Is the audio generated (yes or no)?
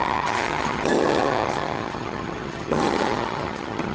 yes